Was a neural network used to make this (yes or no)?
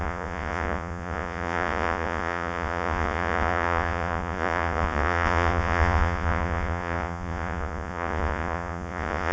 yes